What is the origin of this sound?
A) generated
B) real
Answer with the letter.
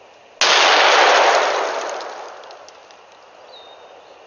B